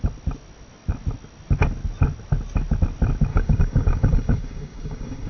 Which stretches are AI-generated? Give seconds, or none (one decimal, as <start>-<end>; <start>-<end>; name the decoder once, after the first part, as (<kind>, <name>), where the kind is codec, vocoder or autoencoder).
3.3-5.3 (codec, DAC)